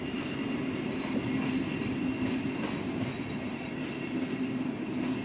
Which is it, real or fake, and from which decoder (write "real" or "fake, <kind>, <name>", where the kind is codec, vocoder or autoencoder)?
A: real